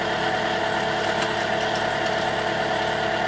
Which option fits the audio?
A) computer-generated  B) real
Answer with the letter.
B